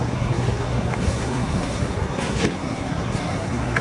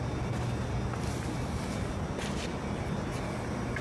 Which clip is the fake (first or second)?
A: first